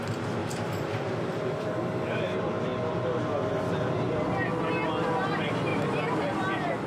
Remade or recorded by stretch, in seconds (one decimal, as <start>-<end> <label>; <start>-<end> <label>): 0.0-2.7 remade; 2.7-5.0 recorded; 5.0-6.9 remade